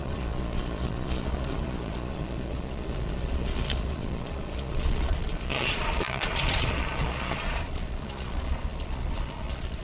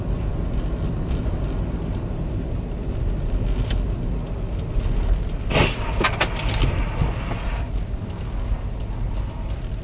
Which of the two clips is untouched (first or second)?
second